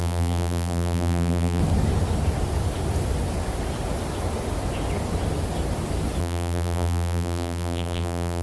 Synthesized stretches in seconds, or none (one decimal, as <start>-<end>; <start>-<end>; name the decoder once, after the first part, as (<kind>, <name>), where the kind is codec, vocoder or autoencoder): 0.0-1.6 (vocoder, BigVGAN v2); 6.2-8.4